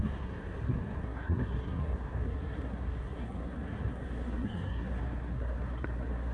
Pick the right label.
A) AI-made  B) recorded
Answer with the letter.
A